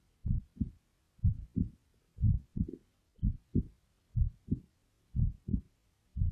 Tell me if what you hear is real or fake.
real